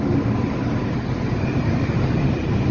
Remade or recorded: recorded